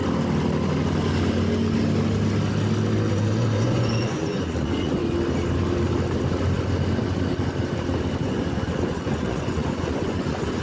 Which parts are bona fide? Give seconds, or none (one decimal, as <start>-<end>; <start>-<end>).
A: 0.0-3.1; 5.0-8.2